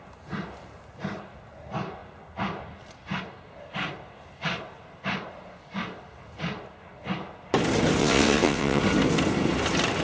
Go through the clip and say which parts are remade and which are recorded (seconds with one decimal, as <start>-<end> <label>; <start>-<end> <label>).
0.0-8.0 recorded; 8.0-8.8 remade; 8.8-10.0 recorded